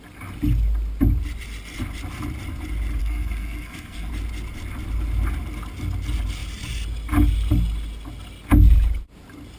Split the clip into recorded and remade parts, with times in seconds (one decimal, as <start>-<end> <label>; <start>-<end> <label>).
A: 0.0-3.0 recorded; 3.0-4.1 remade; 4.1-9.6 recorded